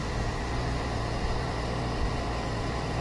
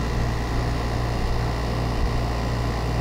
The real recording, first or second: second